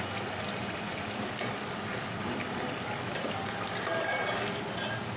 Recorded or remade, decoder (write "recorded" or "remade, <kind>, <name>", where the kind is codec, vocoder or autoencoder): recorded